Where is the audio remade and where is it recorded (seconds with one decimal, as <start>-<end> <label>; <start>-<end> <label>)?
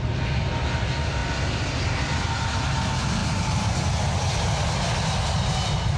0.0-3.2 recorded; 3.2-3.9 remade; 3.9-6.0 recorded